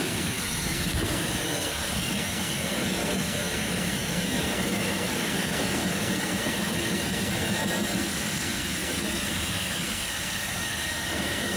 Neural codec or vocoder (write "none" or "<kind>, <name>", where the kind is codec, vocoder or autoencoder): codec, SNAC